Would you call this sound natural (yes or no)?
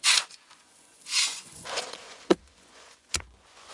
no